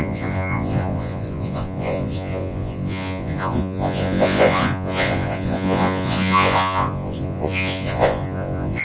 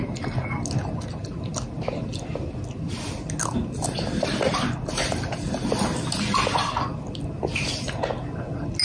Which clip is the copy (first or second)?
first